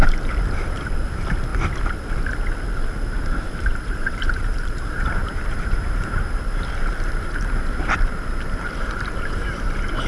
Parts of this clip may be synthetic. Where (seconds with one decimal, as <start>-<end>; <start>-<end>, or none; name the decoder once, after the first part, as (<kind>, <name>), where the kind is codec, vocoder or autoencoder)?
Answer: 0.0-1.5 (vocoder, BigVGAN v2); 3.4-10.1